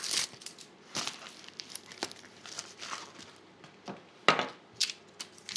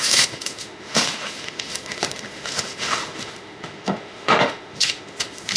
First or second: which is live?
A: first